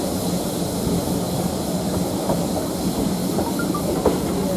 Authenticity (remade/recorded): recorded